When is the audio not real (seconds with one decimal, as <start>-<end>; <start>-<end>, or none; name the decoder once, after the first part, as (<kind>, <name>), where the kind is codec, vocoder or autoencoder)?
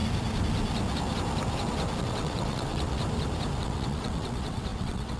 2.0-3.0 (vocoder, WaveNeXt); 3.6-5.2